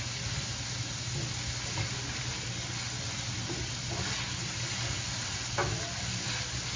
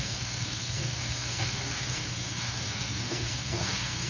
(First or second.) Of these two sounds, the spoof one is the second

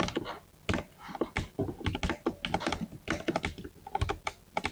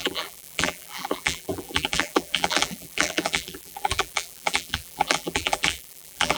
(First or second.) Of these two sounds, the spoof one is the second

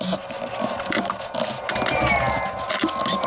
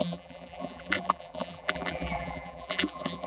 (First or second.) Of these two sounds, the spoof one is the second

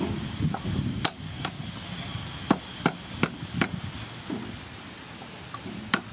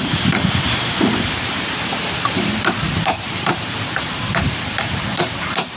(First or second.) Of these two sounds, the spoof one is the second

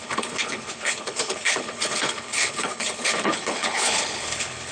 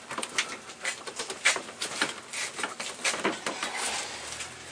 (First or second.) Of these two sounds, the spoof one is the first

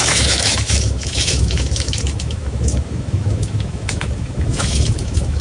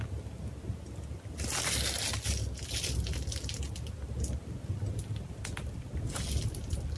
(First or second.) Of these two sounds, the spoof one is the first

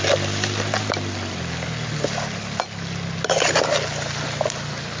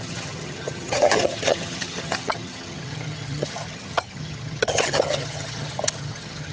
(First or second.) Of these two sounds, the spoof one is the second